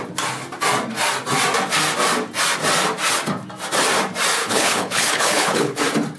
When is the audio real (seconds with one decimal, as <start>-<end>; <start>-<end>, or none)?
0.0-4.4; 5.8-6.2